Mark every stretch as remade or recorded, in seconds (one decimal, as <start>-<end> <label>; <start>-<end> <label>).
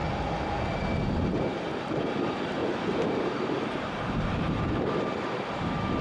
0.0-2.6 recorded; 2.6-4.8 remade; 4.8-6.0 recorded